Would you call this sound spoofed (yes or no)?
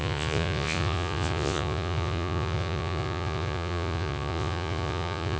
yes